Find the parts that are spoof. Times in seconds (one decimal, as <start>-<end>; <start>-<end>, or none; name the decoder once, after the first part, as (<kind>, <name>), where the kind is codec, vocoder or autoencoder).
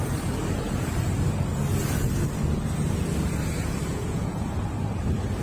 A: 3.9-4.6 (vocoder, Vocos)